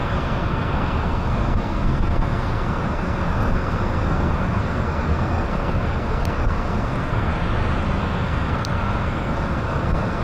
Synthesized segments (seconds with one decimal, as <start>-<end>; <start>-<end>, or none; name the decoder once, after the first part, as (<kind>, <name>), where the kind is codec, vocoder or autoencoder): 0.0-7.3 (codec, SNAC); 8.0-10.2